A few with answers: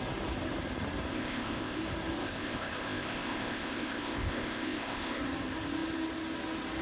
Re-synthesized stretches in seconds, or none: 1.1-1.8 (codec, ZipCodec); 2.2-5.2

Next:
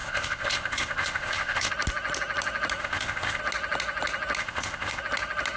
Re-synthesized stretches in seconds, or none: 0.0-1.7 (codec, ZipCodec); 2.8-3.4; 4.4-5.0

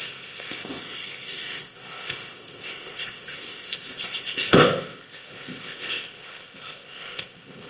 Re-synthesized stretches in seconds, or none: 0.0-7.7 (codec, ZipCodec)

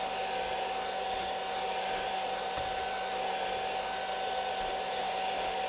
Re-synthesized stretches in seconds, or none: none